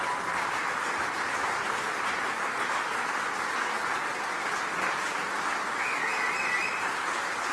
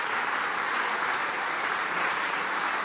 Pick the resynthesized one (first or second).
second